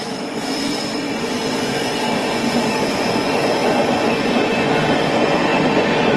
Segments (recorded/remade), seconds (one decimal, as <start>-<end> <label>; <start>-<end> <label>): 0.0-6.2 remade